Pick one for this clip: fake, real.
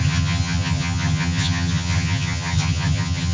fake